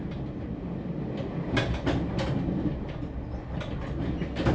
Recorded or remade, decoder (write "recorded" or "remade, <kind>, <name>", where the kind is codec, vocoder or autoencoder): recorded